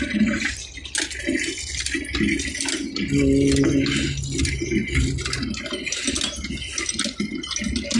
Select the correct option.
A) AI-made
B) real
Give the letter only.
B